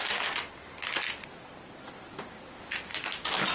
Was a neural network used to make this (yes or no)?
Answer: no